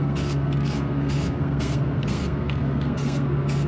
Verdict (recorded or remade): remade